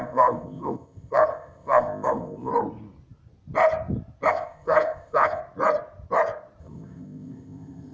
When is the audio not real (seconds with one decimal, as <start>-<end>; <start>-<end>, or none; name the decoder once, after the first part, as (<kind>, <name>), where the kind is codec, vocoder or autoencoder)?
0.0-2.5 (codec, ZipCodec); 4.3-5.4; 6.6-7.9